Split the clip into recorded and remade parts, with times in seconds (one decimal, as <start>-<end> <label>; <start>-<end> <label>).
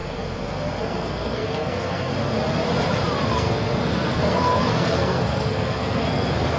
0.0-2.1 remade; 2.1-3.3 recorded; 3.3-6.6 remade